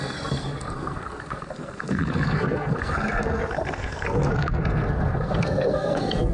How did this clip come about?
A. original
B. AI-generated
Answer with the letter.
B